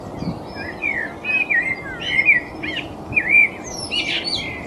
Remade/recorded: recorded